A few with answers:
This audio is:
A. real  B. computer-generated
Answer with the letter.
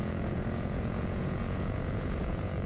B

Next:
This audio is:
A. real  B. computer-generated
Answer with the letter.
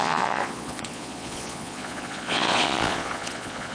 B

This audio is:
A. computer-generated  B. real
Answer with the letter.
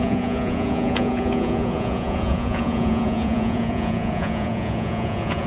A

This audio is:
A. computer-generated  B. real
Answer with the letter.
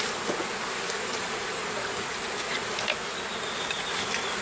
B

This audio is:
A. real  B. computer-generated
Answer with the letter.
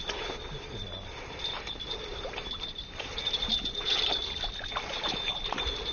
A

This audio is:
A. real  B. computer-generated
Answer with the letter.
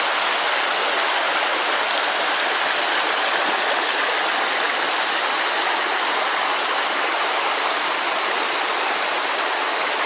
A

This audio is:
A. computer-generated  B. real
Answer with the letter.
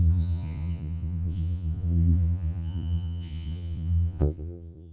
A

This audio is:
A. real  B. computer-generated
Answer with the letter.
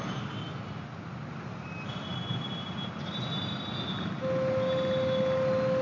A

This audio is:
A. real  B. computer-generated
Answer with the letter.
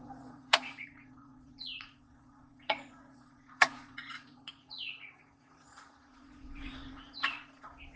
B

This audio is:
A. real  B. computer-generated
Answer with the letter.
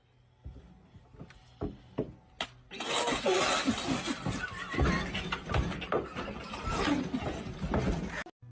A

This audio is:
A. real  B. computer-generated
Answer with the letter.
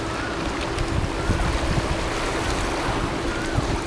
A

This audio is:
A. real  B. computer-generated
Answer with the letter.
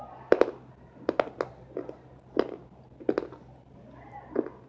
A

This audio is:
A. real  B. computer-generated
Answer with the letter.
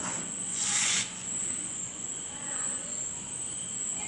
B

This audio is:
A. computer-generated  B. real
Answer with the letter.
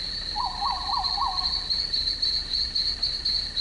B